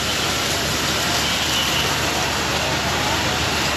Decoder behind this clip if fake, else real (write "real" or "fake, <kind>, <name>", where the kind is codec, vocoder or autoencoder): real